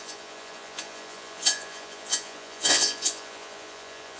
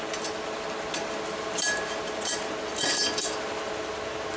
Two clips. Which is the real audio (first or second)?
second